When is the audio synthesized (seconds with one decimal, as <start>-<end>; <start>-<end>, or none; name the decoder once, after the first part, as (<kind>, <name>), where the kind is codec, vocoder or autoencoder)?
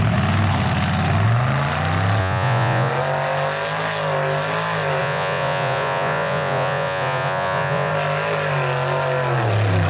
2.2-2.9 (vocoder, Vocos); 5.0-7.9